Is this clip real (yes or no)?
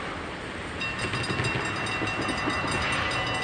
yes